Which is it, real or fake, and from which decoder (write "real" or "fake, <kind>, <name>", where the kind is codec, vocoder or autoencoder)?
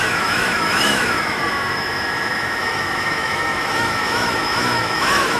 fake, autoencoder, DAC-VAE